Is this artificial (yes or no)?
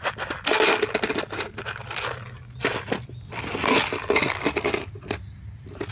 no